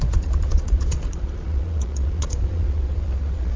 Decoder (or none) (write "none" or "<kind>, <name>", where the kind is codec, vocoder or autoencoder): vocoder, Vocos